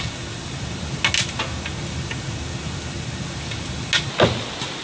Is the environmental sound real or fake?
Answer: real